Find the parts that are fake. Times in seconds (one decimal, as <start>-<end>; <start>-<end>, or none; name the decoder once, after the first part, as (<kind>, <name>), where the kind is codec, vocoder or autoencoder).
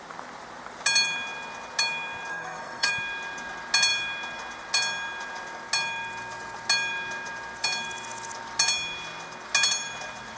2.3-2.9 (codec, SNAC)